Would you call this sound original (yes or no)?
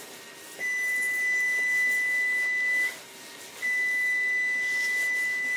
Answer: yes